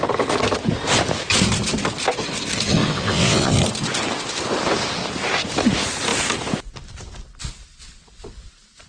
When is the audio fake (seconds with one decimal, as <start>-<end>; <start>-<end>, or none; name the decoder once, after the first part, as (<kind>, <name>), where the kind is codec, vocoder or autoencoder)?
2.8-3.5 (vocoder, WaveNeXt)